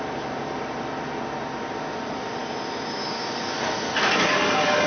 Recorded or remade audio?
recorded